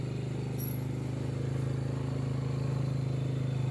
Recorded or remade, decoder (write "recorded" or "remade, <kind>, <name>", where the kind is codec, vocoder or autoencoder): recorded